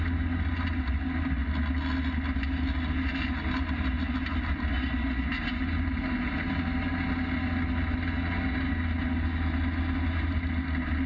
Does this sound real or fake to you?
real